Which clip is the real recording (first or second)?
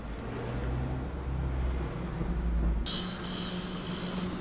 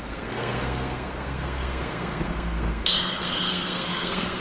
first